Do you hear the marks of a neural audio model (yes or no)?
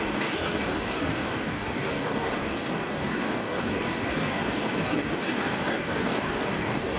yes